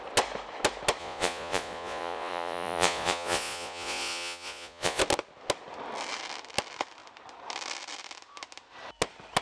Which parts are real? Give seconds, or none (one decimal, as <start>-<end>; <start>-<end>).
0.0-1.0; 5.0-9.4